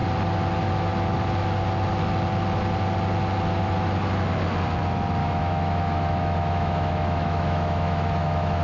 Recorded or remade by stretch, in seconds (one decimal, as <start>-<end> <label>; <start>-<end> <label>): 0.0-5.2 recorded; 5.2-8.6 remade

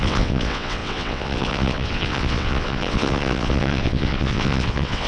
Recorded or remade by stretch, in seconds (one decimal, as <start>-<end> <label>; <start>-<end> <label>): 0.0-5.1 remade

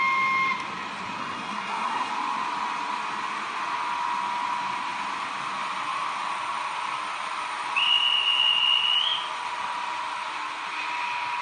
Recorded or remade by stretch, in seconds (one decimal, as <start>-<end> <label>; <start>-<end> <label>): 0.0-1.2 recorded; 1.2-2.1 remade; 2.1-11.4 recorded

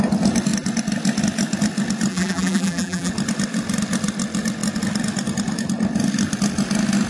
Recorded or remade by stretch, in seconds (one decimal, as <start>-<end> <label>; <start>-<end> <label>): 0.0-2.1 recorded; 2.1-3.1 remade; 3.1-7.1 recorded

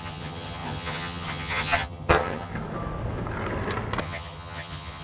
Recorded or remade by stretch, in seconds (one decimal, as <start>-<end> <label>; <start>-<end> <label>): 0.0-2.5 remade; 2.5-4.0 recorded; 4.0-5.0 remade

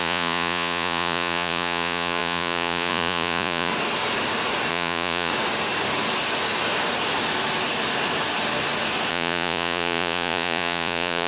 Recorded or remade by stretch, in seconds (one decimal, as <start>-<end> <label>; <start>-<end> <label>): 0.0-3.7 remade; 3.7-4.7 recorded; 4.7-5.3 remade; 5.3-9.1 recorded; 9.1-11.3 remade